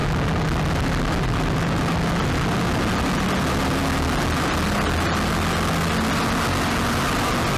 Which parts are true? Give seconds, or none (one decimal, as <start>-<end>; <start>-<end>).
0.0-7.6